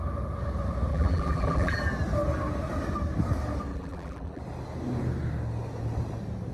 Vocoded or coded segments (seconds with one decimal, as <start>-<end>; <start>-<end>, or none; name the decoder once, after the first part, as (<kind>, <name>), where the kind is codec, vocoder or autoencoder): 0.9-1.8 (vocoder, BigVGAN v2); 3.7-4.4